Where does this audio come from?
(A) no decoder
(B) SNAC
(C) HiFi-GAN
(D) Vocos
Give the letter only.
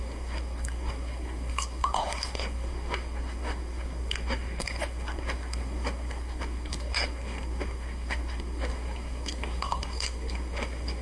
B